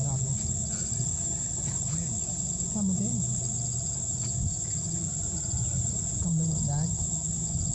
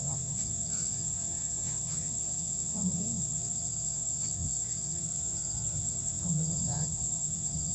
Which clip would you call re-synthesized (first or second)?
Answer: second